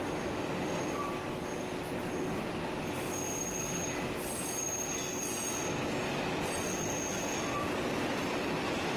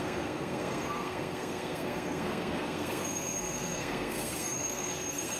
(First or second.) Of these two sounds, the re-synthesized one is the second